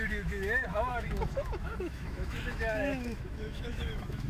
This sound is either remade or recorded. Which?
remade